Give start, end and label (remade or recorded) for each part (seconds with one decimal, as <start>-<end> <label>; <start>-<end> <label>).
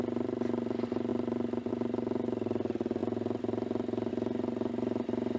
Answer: 0.0-1.1 recorded; 1.1-1.7 remade; 1.7-5.4 recorded